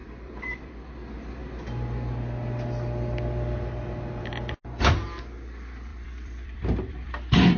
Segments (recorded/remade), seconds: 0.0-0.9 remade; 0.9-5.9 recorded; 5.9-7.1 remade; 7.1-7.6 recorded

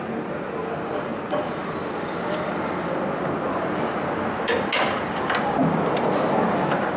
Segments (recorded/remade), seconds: 0.0-7.0 recorded

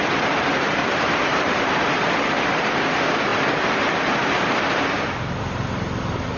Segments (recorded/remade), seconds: 0.0-0.8 recorded; 0.8-1.9 remade; 1.9-6.4 recorded

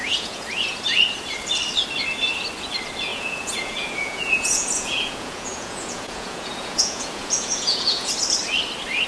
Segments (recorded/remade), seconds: 0.0-0.8 remade; 0.8-3.1 recorded; 3.1-8.1 remade; 8.1-9.1 recorded

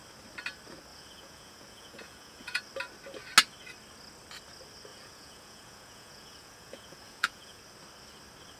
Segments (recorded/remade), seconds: 0.0-0.9 recorded; 0.9-2.6 remade; 2.6-4.9 recorded; 4.9-7.6 remade; 7.6-8.6 recorded

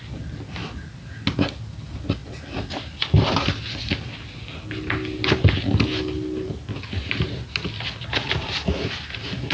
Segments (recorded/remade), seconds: 0.0-9.5 recorded

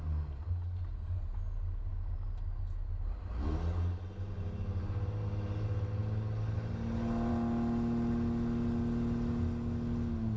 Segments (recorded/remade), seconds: 0.0-10.4 recorded

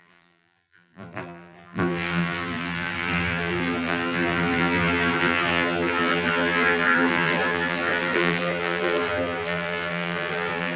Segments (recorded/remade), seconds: 0.0-10.8 remade